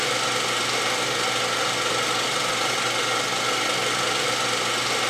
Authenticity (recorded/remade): recorded